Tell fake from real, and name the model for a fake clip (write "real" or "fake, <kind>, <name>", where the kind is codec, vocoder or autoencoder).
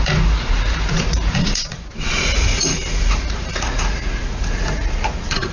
fake, vocoder, Vocos